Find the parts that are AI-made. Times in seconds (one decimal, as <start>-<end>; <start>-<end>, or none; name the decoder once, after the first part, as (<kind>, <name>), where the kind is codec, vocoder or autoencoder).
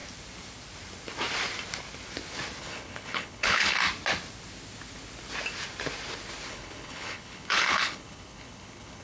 2.6-3.8 (codec, HILCodec); 6.5-9.0